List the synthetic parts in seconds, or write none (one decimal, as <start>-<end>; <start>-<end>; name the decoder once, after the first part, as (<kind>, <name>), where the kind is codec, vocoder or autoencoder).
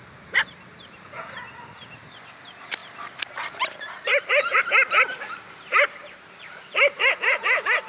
2.8-4.6 (vocoder, BigVGAN v2); 5.7-7.1